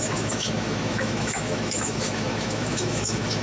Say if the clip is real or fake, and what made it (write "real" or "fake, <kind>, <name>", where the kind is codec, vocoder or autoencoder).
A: fake, autoencoder, DAC-VAE